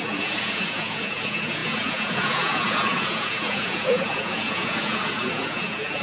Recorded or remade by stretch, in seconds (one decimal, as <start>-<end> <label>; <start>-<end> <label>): 0.0-6.0 remade